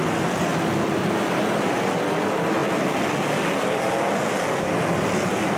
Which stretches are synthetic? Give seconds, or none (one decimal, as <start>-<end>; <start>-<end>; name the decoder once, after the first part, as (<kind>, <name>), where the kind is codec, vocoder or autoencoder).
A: none